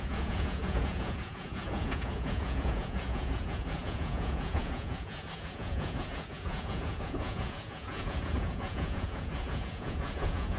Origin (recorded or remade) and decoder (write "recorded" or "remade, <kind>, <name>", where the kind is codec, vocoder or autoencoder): remade, vocoder, Vocos